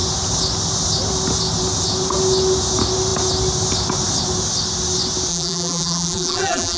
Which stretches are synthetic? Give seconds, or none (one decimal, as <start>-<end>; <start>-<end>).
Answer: 5.3-6.8